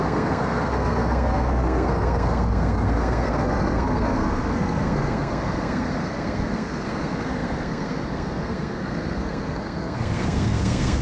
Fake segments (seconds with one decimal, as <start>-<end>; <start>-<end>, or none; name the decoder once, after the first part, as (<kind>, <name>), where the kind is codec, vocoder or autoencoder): 0.0-11.0 (codec, SNAC)